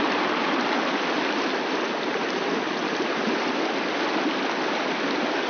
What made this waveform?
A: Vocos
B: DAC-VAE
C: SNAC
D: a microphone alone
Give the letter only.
D